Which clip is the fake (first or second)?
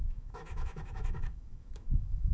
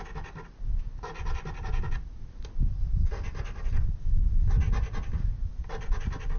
first